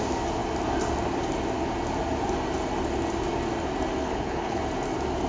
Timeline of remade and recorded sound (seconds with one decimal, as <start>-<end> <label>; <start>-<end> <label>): 0.0-4.0 recorded; 4.0-4.6 remade; 4.6-5.3 recorded